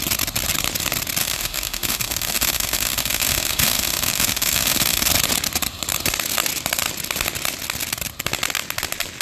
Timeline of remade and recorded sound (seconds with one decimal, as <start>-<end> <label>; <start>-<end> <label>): 0.0-1.2 recorded; 1.2-5.1 remade; 5.1-9.2 recorded